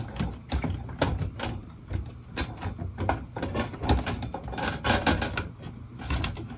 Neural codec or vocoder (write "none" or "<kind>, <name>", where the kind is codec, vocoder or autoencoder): none